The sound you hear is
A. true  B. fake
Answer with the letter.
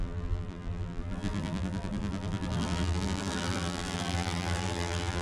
B